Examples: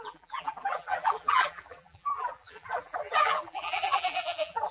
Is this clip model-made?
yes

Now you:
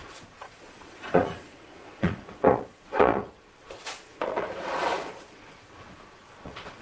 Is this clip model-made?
yes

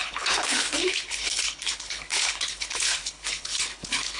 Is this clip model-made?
yes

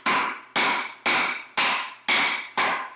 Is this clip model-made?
no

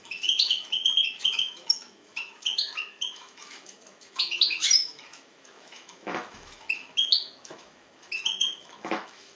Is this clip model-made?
yes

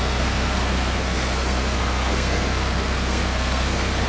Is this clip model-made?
yes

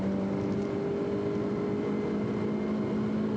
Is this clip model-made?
no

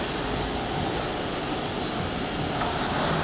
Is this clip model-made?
no